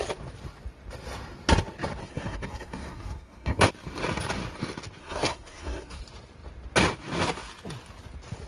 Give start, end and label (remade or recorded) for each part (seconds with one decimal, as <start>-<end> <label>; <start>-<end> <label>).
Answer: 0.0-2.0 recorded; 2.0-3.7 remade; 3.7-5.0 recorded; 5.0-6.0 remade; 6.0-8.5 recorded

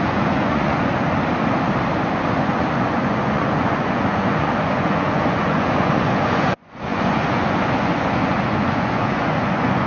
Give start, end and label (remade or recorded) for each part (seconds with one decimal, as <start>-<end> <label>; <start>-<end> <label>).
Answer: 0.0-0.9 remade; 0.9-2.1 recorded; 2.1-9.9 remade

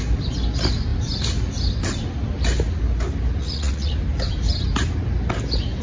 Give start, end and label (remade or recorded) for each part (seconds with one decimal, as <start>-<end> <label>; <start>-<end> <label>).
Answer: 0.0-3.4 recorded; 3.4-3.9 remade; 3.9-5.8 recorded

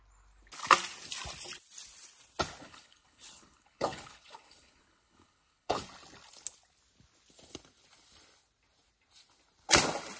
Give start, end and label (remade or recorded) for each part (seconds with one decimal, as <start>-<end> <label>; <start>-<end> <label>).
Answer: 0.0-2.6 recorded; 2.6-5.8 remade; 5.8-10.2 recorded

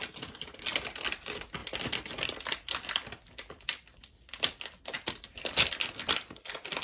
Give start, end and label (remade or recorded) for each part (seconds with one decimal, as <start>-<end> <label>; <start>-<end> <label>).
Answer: 0.0-6.8 recorded

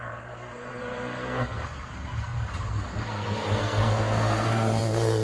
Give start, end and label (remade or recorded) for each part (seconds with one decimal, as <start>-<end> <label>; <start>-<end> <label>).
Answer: 0.0-5.2 remade

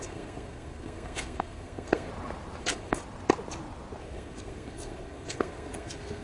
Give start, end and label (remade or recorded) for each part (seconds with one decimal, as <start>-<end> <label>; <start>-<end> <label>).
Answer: 0.0-2.1 remade; 2.1-2.6 recorded; 2.6-3.0 remade; 3.0-4.0 recorded; 4.0-6.2 remade